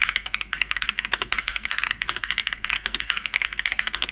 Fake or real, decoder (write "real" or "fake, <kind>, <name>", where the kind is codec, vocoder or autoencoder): fake, codec, SNAC